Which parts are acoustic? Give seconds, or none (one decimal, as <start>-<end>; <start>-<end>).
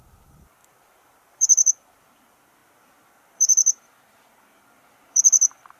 none